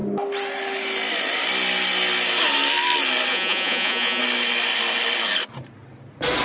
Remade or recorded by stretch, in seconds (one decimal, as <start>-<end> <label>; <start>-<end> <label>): 0.0-3.3 recorded; 3.3-4.2 remade; 4.2-6.4 recorded